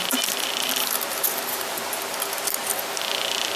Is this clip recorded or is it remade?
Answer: recorded